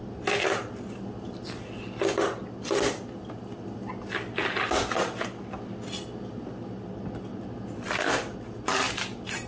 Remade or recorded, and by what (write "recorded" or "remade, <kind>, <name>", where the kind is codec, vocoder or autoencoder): recorded